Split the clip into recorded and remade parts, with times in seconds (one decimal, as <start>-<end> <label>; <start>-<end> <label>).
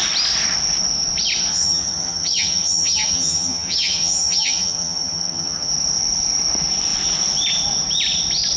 0.0-1.5 recorded; 1.5-5.7 remade; 5.7-8.6 recorded